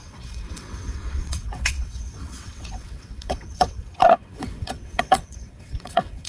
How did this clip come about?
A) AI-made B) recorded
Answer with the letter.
A